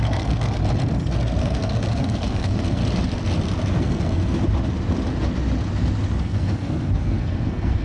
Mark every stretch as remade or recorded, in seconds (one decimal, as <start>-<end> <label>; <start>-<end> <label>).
0.0-0.6 remade; 0.6-1.4 recorded; 1.4-2.8 remade; 2.8-3.8 recorded; 3.8-4.4 remade; 4.4-6.2 recorded; 6.2-7.8 remade